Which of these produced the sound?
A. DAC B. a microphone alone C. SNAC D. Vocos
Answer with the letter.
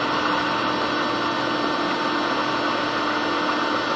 B